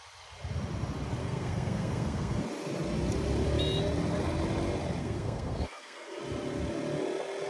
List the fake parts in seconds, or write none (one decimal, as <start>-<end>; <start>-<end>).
1.2-2.4; 5.0-6.2